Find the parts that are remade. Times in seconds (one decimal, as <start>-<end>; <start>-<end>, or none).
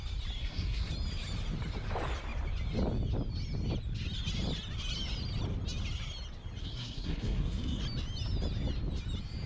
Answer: 0.4-0.9; 6.6-7.8